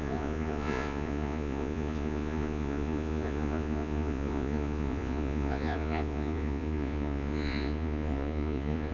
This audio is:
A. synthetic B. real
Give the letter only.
A